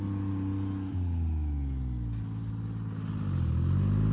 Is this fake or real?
real